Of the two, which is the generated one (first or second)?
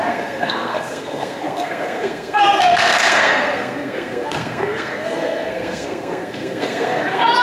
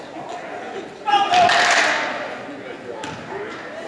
first